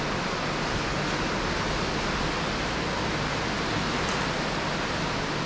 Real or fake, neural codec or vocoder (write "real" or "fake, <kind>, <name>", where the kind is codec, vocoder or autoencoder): real